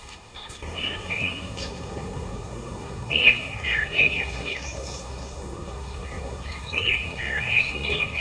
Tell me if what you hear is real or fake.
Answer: fake